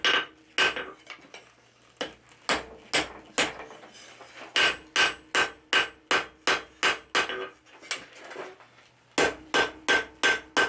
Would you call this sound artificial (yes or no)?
no